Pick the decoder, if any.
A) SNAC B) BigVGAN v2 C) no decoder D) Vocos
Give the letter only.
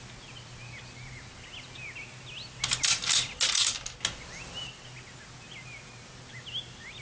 C